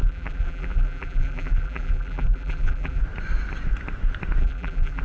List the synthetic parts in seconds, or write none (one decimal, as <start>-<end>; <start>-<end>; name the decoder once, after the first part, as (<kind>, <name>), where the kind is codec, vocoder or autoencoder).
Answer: 0.0-3.0 (vocoder, BigVGAN v2); 4.4-5.0